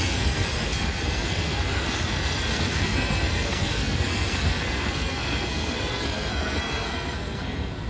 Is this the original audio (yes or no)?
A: no